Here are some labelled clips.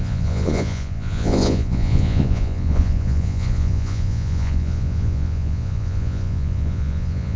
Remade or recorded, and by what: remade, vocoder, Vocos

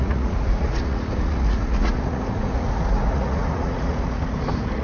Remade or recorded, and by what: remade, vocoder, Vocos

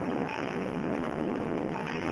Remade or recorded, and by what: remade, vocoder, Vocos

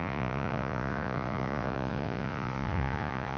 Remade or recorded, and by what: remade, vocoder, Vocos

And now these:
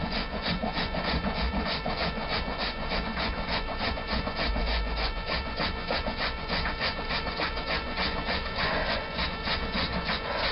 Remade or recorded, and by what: remade, vocoder, Vocos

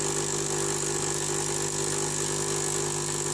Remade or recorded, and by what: recorded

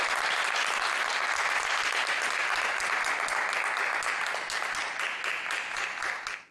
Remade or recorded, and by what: recorded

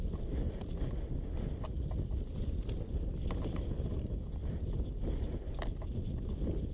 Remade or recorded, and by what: recorded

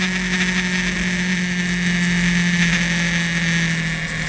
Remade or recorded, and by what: recorded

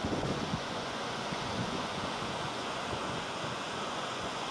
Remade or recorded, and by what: remade, vocoder, Vocos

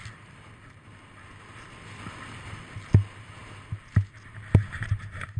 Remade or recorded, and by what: recorded